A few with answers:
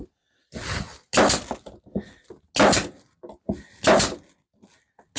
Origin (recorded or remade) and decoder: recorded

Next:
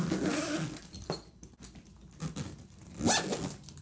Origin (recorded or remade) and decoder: recorded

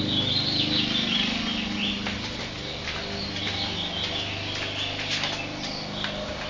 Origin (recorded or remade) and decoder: recorded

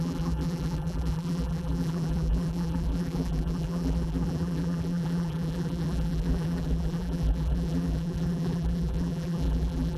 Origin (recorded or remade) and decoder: remade, vocoder, BigVGAN v2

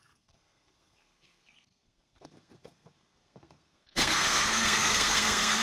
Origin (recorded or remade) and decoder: remade, codec, SNAC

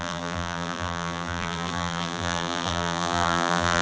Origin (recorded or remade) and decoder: remade, vocoder, BigVGAN v2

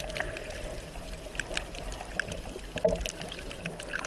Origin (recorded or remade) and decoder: recorded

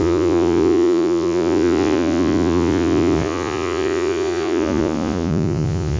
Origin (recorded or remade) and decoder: remade, vocoder, Vocos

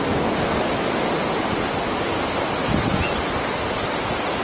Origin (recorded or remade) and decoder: recorded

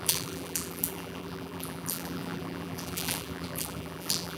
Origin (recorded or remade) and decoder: remade, vocoder, BigVGAN v2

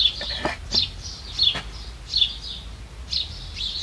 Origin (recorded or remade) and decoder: recorded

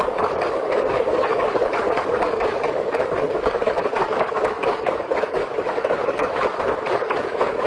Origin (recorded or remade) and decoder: remade, codec, DAC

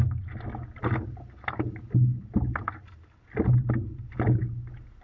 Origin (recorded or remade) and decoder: recorded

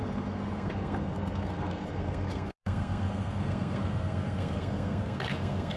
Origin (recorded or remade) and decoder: remade, codec, SNAC